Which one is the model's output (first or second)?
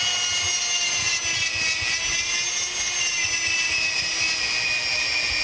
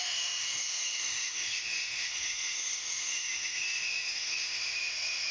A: second